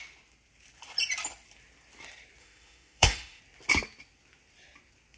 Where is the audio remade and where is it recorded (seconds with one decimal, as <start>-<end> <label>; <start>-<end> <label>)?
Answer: 0.0-2.4 recorded; 2.4-3.4 remade; 3.4-5.2 recorded